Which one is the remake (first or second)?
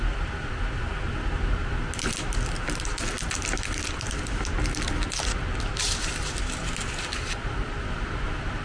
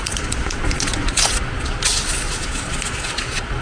second